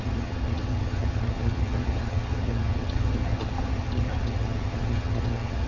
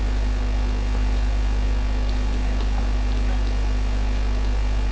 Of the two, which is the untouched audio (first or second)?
second